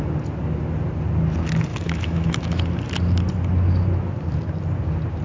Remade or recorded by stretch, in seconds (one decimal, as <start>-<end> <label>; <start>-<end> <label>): 0.0-1.7 recorded; 1.7-2.6 remade; 2.6-5.2 recorded

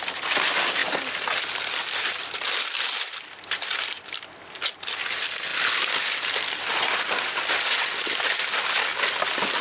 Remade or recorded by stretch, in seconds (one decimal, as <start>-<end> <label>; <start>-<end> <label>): 0.0-9.6 recorded

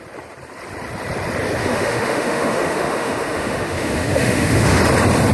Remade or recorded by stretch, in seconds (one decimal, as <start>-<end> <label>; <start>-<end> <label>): 0.0-1.6 recorded; 1.6-4.8 remade; 4.8-5.3 recorded